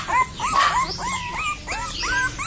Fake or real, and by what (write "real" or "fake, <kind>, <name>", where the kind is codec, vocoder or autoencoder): real